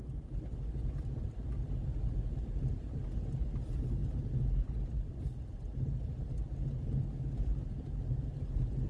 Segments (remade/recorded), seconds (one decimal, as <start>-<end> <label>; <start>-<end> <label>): 0.0-8.9 recorded